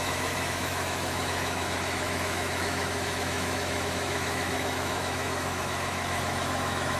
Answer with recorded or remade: remade